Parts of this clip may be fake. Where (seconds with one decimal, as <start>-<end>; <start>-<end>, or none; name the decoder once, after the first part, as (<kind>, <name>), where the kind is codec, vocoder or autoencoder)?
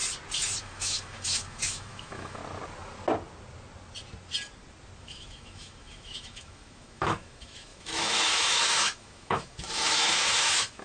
0.6-2.4 (autoencoder, DAC-VAE); 5.0-10.8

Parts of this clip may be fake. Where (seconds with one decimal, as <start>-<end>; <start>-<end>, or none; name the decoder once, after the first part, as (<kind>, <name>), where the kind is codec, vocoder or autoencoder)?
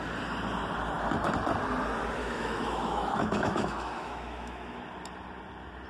2.2-4.8 (autoencoder, DAC-VAE)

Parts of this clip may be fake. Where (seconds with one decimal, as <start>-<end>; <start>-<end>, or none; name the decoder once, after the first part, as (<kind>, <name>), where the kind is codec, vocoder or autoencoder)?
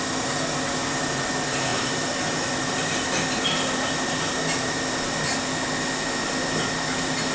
none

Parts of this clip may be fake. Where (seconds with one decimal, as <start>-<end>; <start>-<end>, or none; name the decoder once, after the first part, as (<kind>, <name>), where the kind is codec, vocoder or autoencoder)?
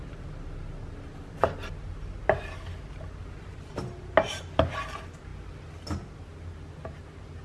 none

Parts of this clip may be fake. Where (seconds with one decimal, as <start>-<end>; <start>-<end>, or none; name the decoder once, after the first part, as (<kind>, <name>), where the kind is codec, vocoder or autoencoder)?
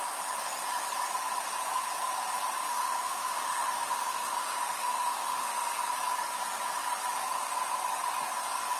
2.6-5.7 (autoencoder, DAC-VAE)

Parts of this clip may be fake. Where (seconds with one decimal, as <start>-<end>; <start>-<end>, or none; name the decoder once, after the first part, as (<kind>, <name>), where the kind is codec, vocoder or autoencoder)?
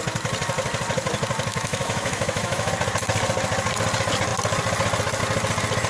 1.5-2.7 (autoencoder, DAC-VAE)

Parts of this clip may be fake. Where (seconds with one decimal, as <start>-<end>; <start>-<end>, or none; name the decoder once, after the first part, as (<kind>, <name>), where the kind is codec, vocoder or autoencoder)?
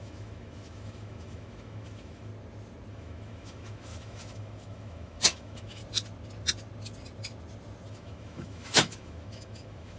0.0-2.3 (autoencoder, DAC-VAE); 2.9-5.8; 7.9-10.0